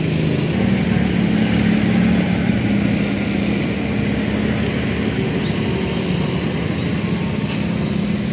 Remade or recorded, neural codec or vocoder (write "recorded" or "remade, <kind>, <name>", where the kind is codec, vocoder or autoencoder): recorded